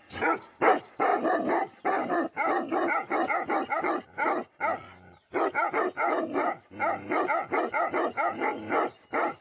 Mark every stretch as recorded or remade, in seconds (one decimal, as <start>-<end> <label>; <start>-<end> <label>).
0.0-9.4 recorded